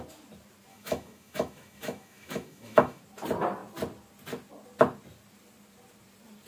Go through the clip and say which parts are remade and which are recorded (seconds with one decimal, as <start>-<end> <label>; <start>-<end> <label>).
0.0-0.7 recorded; 0.7-3.0 remade; 3.0-6.5 recorded